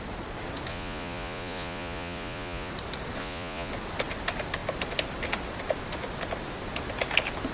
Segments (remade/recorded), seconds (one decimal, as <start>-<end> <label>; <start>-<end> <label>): 0.0-0.7 recorded; 0.7-2.7 remade; 2.7-3.2 recorded; 3.2-3.7 remade; 3.7-7.5 recorded